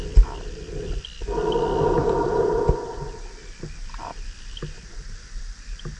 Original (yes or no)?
yes